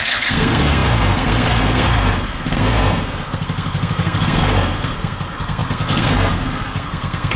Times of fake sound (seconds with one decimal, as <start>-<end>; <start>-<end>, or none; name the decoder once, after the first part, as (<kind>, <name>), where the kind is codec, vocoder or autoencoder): 0.0-7.4 (codec, SNAC)